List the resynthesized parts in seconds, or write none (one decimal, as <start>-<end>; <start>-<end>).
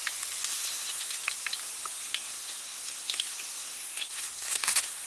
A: 0.4-1.2; 2.0-5.1